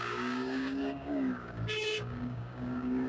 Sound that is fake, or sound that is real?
fake